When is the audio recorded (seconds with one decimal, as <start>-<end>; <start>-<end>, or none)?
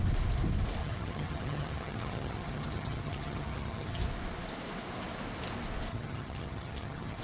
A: 0.0-0.8; 4.0-5.9